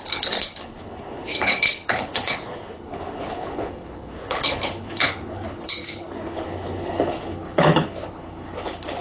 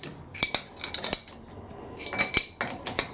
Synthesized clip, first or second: first